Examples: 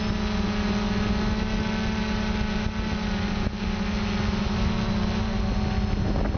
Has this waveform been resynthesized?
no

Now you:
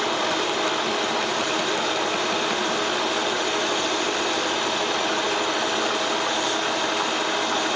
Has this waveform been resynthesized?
no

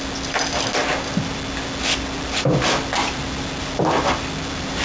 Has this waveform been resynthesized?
no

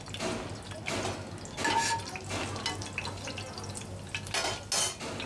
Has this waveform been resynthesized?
no